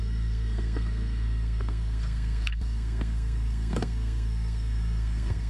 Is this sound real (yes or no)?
no